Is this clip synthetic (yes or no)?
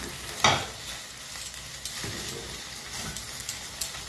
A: no